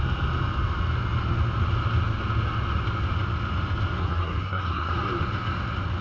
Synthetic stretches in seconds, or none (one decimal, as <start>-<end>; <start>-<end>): 4.0-4.9